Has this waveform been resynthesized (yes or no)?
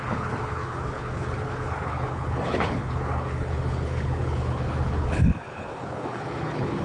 yes